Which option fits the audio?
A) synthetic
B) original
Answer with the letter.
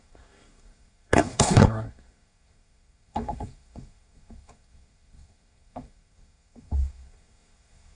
A